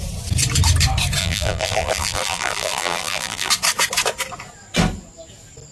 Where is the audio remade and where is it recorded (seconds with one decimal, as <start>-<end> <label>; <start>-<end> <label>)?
0.0-1.2 recorded; 1.2-3.5 remade; 3.5-5.7 recorded

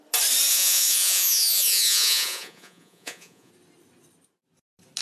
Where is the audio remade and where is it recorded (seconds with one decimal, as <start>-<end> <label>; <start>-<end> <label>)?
0.0-0.5 recorded; 0.5-3.5 remade; 3.5-5.0 recorded

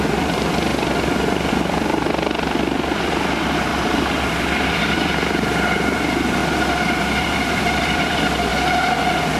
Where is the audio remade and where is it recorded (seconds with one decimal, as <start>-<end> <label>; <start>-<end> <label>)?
0.0-6.4 remade; 6.4-7.0 recorded; 7.0-8.5 remade; 8.5-9.4 recorded

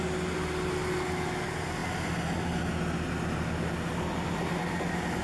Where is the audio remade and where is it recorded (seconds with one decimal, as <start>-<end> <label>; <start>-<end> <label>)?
0.0-5.2 recorded

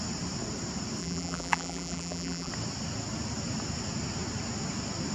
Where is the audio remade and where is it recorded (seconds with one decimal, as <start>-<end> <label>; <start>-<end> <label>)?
0.0-1.0 recorded; 1.0-2.5 remade; 2.5-5.1 recorded

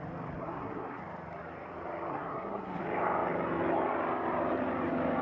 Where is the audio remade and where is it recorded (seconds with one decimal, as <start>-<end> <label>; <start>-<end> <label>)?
0.0-0.4 recorded; 0.4-1.0 remade; 1.0-2.1 recorded; 2.1-2.8 remade; 2.8-5.2 recorded

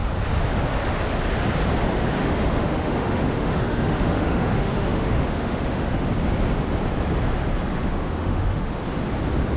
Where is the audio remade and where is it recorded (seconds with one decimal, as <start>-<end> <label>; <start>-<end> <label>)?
0.0-2.2 recorded; 2.2-6.1 remade; 6.1-7.7 recorded; 7.7-8.7 remade; 8.7-9.6 recorded

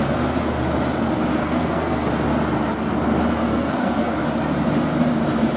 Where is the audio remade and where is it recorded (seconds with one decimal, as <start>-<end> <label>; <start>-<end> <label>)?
0.0-1.4 recorded; 1.4-2.1 remade; 2.1-3.5 recorded; 3.5-4.1 remade; 4.1-5.6 recorded